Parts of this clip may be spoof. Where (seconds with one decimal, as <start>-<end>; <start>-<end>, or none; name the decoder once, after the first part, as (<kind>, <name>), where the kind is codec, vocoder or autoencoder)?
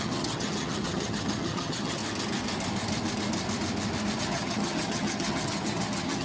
0.0-2.0 (vocoder, HiFi-GAN); 4.2-6.2